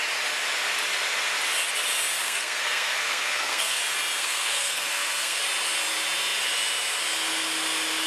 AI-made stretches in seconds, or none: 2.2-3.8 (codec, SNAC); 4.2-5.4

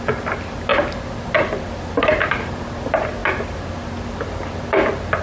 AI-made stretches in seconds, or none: none

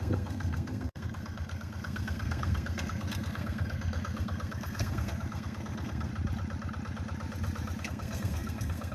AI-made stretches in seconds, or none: 0.0-6.1 (codec, SNAC); 7.8-8.9

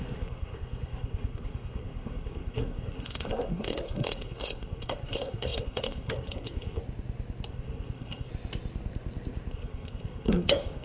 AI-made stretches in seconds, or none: 0.0-6.8 (codec, SNAC); 7.5-8.3; 9.5-10.8

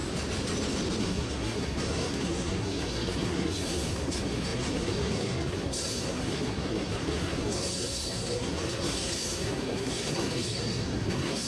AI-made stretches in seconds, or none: 1.0-11.5 (codec, SNAC)

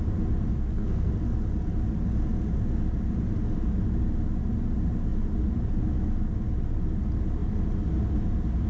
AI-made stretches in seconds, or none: 0.5-1.1 (codec, SNAC)